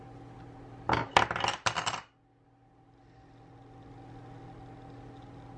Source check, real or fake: real